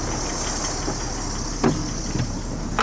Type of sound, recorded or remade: recorded